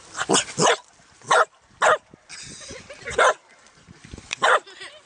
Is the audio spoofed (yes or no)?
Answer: no